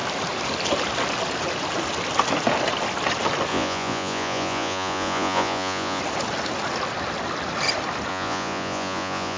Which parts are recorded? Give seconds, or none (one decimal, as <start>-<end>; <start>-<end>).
0.0-3.5; 6.0-8.1